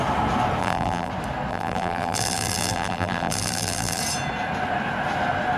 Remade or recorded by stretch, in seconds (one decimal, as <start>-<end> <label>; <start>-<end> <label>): 0.0-0.6 recorded; 0.6-1.1 remade; 1.1-1.5 recorded; 1.5-4.0 remade; 4.0-5.6 recorded